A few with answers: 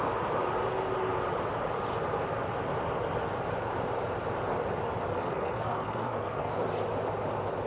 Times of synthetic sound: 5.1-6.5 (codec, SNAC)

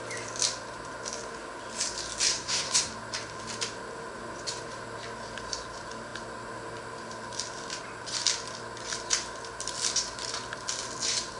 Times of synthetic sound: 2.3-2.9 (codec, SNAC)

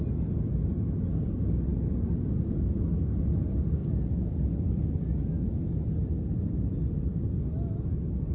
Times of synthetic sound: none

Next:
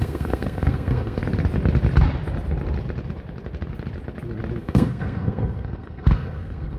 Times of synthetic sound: 0.0-1.2 (codec, SNAC); 4.6-6.8

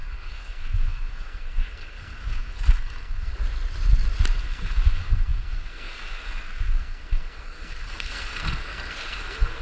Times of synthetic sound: 0.0-3.3 (codec, SNAC); 4.4-9.6

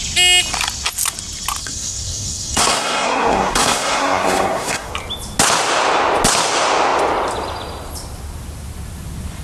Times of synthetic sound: 1.6-4.9 (codec, SNAC)